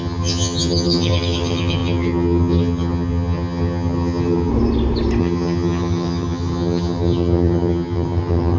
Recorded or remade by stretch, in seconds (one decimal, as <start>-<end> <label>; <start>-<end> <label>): 0.0-4.5 remade; 4.5-5.2 recorded; 5.2-8.6 remade